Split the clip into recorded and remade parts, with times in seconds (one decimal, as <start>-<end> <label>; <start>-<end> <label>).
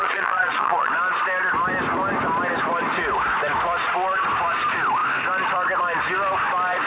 0.0-0.9 remade; 0.9-6.9 recorded